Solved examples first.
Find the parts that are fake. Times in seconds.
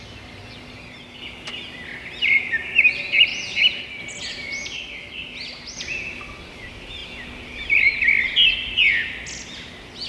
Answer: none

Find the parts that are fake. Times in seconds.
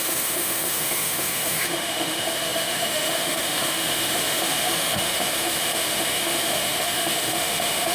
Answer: 0.0-7.9 (autoencoder, DAC-VAE)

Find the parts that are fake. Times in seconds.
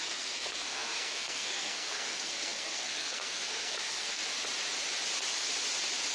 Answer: 0.0-4.2 (codec, SNAC)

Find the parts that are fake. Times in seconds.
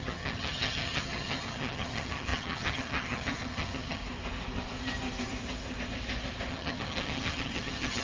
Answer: 0.0-4.0 (vocoder, HiFi-GAN); 6.5-8.0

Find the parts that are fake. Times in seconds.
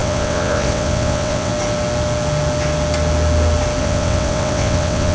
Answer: 0.0-1.5 (vocoder, WaveNeXt); 3.8-5.1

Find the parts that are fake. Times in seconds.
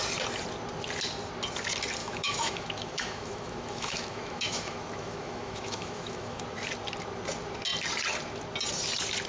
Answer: 2.0-6.4 (autoencoder, DAC-VAE)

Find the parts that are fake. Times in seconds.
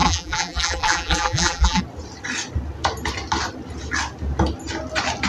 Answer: 0.0-1.8 (vocoder, BigVGAN v2)